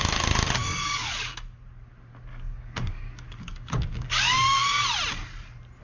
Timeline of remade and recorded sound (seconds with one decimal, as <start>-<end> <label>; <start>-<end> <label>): 0.0-0.6 recorded; 0.6-1.4 remade; 1.4-2.3 recorded; 2.3-4.6 remade; 4.6-5.8 recorded